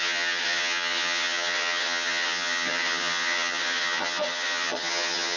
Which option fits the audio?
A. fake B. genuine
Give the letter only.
A